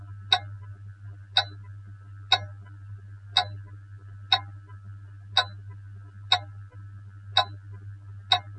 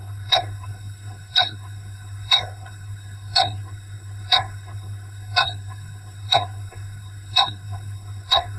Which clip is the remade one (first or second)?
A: second